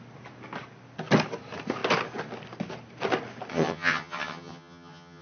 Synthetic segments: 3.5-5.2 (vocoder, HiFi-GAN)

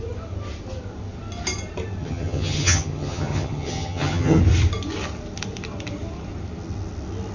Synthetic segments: 2.0-4.4 (vocoder, HiFi-GAN)

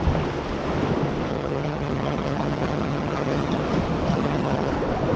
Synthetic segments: 1.3-3.6 (vocoder, HiFi-GAN); 4.1-4.7